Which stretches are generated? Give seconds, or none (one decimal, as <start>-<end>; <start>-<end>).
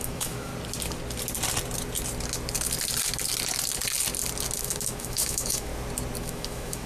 0.0-0.5; 4.6-5.7; 6.2-6.9